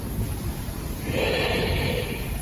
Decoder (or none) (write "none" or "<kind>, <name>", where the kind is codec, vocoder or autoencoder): vocoder, BigVGAN v2